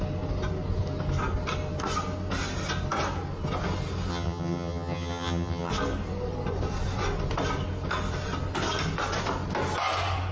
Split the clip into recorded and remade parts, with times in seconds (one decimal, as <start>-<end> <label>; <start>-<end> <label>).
0.0-4.1 recorded; 4.1-5.7 remade; 5.7-10.3 recorded